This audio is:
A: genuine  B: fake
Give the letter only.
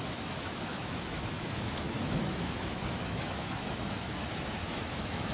B